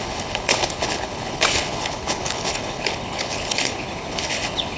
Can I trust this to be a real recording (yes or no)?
no